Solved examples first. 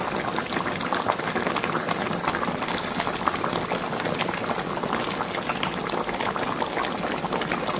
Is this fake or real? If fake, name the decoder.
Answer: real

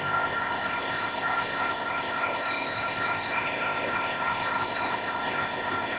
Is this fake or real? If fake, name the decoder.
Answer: fake, codec, ZipCodec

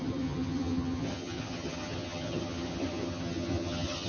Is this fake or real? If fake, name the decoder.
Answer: fake, vocoder, HiFi-GAN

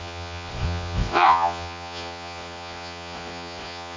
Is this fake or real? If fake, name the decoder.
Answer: fake, vocoder, Vocos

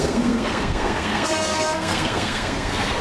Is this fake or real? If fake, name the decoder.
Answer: fake, codec, SNAC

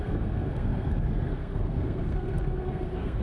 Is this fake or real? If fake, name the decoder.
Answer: fake, codec, SNAC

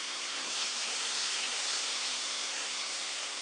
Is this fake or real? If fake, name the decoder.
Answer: fake, codec, SNAC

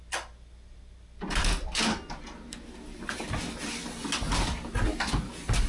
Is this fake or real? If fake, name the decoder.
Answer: real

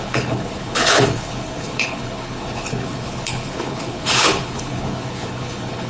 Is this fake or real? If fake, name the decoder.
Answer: fake, codec, HILCodec